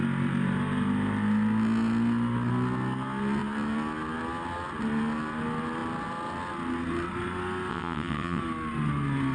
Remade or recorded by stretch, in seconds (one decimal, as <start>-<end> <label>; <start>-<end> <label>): 0.0-7.7 recorded; 7.7-8.4 remade; 8.4-9.3 recorded